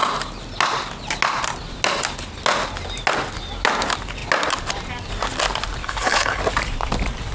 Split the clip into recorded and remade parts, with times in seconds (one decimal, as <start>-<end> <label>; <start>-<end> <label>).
0.0-5.8 recorded; 5.8-6.4 remade; 6.4-7.3 recorded